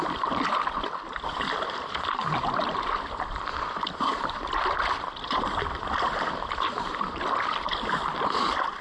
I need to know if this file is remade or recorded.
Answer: remade